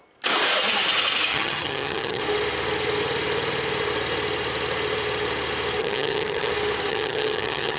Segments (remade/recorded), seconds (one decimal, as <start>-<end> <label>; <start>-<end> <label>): 0.0-1.3 recorded; 1.3-2.2 remade; 2.2-5.8 recorded; 5.8-6.5 remade; 6.5-6.9 recorded; 6.9-7.8 remade